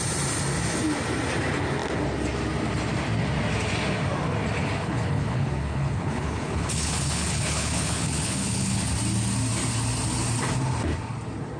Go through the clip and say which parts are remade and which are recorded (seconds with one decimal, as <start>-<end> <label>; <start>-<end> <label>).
0.0-4.6 recorded; 4.6-8.8 remade; 8.8-11.6 recorded